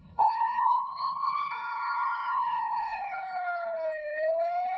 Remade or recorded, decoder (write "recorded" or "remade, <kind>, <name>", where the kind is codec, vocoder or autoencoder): remade, codec, HILCodec